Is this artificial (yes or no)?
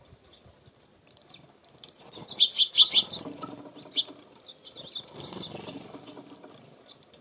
no